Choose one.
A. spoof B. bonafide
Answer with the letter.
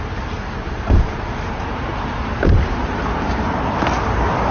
A